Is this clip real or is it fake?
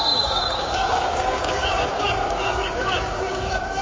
fake